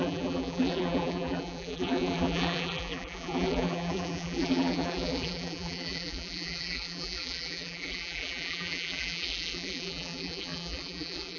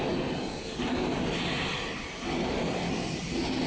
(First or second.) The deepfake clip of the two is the first